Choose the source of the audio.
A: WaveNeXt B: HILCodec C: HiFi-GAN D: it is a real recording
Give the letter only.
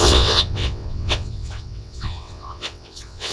A